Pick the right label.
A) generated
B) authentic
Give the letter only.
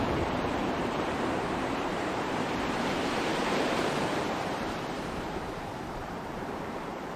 A